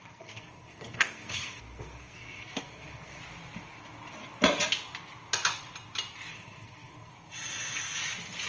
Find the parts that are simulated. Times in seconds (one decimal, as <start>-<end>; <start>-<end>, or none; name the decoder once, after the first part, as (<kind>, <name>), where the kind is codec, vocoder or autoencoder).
0.0-3.2 (codec, SNAC); 6.3-7.1